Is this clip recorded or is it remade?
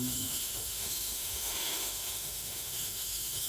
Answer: remade